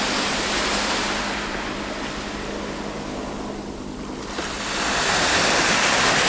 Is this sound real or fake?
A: real